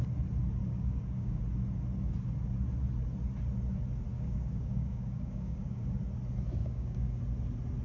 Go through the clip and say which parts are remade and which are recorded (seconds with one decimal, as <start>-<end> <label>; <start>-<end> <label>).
0.0-0.6 recorded; 0.6-1.4 remade; 1.4-4.1 recorded; 4.1-6.0 remade; 6.0-6.6 recorded; 6.6-7.2 remade; 7.2-7.8 recorded